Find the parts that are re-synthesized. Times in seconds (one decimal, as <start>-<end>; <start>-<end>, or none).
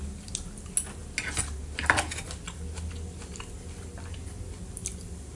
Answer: none